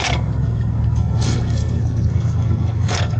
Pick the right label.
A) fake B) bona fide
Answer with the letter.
A